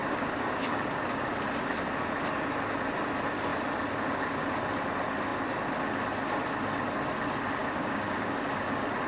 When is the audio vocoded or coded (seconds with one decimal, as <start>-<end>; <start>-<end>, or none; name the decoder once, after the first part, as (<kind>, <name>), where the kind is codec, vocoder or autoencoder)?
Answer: 0.0-1.3 (codec, DAC); 7.6-8.5